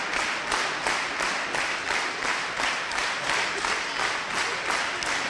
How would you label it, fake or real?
real